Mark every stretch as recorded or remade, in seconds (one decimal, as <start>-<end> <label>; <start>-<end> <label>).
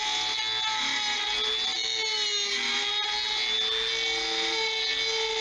0.0-5.4 recorded